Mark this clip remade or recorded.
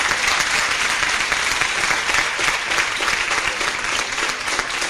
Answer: remade